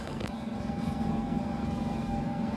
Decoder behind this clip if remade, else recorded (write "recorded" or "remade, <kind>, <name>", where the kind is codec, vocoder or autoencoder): remade, codec, SNAC